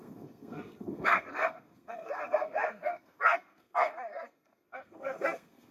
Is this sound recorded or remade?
remade